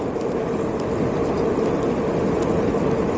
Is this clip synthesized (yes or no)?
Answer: no